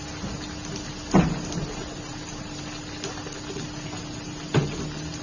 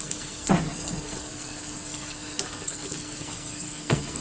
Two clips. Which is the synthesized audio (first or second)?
second